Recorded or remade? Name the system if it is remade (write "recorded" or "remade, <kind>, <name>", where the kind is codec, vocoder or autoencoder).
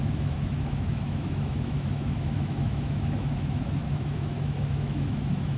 remade, autoencoder, DAC-VAE